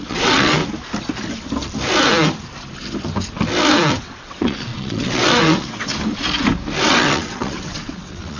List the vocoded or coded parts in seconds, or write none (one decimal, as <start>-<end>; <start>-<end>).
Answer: 0.0-0.6; 4.0-5.9; 6.8-8.4